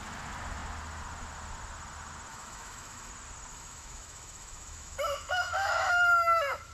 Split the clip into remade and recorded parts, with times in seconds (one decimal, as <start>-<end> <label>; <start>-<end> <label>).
0.0-2.3 recorded; 2.3-3.1 remade; 3.1-3.5 recorded; 3.5-6.7 remade